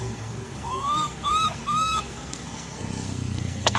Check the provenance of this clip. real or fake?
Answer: fake